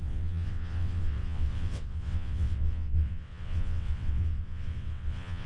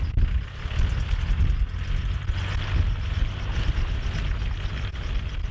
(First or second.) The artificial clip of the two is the first